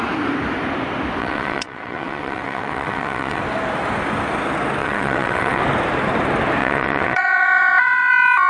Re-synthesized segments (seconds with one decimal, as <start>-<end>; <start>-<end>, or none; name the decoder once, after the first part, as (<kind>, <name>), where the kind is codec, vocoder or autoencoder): 1.2-3.4 (vocoder, WaveNeXt); 4.8-5.6; 6.6-8.1